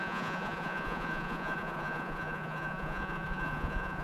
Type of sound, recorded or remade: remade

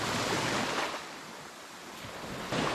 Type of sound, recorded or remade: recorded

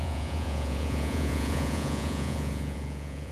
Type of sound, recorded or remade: remade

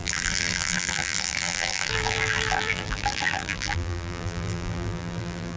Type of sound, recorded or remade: remade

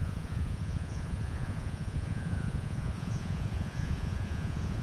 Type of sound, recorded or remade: remade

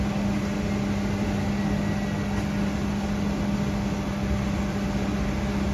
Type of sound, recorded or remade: recorded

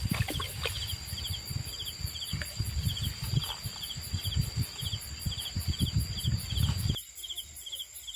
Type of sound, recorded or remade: recorded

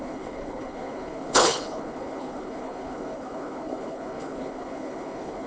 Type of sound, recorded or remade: remade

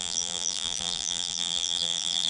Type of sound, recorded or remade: remade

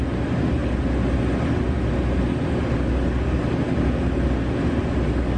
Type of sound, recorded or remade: recorded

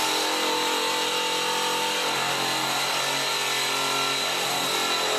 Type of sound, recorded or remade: recorded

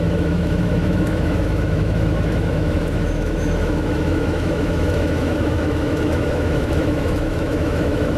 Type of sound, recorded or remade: remade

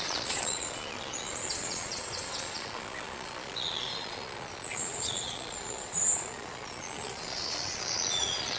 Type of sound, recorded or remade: remade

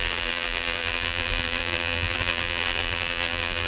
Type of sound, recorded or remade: remade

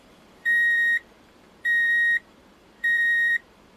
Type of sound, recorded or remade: remade